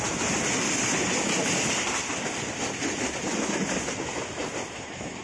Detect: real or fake real